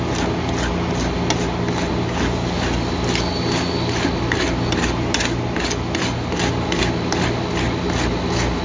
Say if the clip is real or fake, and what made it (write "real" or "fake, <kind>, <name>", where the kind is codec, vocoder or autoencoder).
real